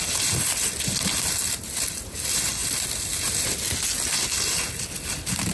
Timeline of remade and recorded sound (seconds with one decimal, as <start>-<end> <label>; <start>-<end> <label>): 0.0-5.5 recorded